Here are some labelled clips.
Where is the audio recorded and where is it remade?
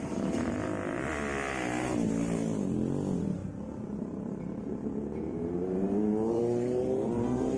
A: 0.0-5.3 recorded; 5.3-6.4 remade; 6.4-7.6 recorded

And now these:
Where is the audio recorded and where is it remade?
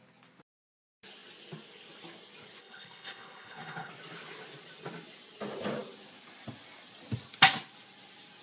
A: 0.0-2.6 recorded; 2.6-3.9 remade; 3.9-8.4 recorded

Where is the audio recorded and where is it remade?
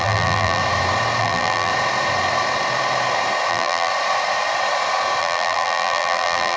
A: 0.0-0.6 remade; 0.6-1.2 recorded; 1.2-1.7 remade; 1.7-3.5 recorded; 3.5-3.9 remade; 3.9-5.2 recorded; 5.2-6.6 remade